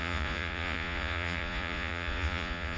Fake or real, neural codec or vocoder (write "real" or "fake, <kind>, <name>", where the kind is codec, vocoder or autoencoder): fake, vocoder, Vocos